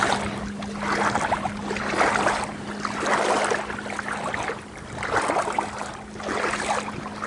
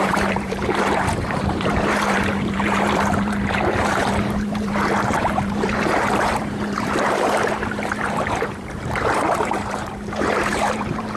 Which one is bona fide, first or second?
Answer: first